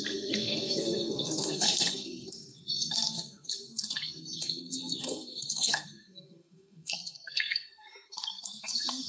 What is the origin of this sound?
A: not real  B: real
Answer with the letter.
A